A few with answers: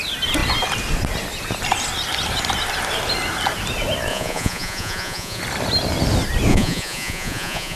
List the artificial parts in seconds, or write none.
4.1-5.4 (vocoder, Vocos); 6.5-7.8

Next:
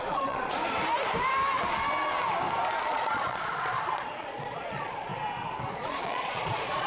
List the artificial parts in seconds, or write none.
0.0-0.6 (vocoder, Vocos); 2.8-5.1; 5.7-6.9

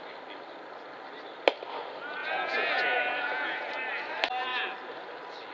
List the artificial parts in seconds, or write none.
2.2-3.7 (vocoder, Vocos)

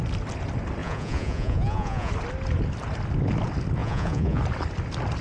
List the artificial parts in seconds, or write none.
0.8-2.1 (vocoder, Vocos); 3.8-4.4

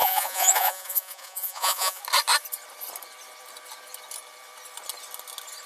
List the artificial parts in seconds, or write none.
0.0-2.0 (vocoder, Vocos)

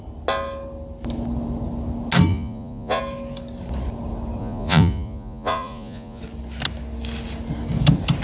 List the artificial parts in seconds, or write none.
2.3-3.0 (vocoder, Vocos); 4.4-6.2

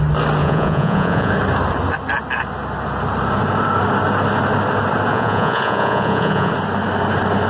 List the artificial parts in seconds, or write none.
0.4-1.3 (vocoder, Vocos); 5.1-6.5

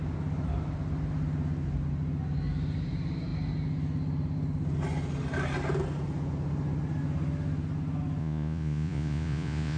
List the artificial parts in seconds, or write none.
8.2-9.8 (vocoder, Vocos)